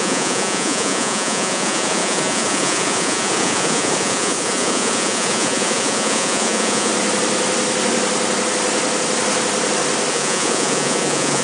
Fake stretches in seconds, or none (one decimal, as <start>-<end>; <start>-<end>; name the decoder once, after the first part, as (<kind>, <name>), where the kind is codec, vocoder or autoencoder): 0.0-6.9 (vocoder, Vocos); 10.1-11.4